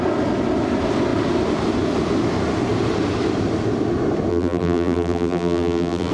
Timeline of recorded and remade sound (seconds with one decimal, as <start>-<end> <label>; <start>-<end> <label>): 0.0-4.3 recorded; 4.3-6.1 remade